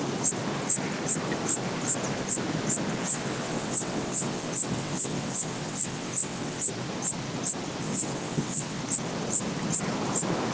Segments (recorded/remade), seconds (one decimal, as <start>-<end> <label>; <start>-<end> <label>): 0.0-3.0 recorded; 3.0-6.7 remade; 6.7-7.8 recorded; 7.8-8.8 remade; 8.8-10.5 recorded